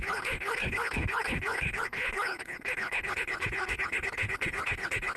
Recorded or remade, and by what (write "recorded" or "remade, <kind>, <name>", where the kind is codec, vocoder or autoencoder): remade, codec, HILCodec